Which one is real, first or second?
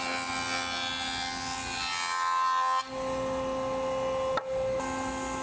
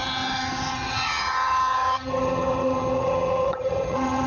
first